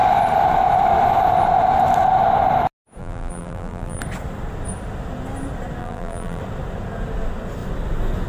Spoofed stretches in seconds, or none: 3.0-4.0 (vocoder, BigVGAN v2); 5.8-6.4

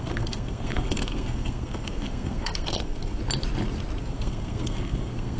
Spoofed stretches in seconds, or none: 0.0-3.2 (codec, SNAC); 4.0-5.4

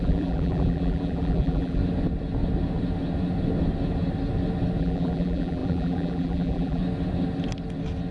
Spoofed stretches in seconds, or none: 0.0-1.8 (vocoder, BigVGAN v2); 4.8-6.8